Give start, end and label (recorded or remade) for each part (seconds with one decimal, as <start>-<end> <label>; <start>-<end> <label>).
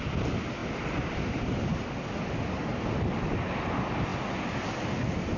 0.0-0.6 recorded; 0.6-1.6 remade; 1.6-2.7 recorded; 2.7-3.5 remade; 3.5-5.4 recorded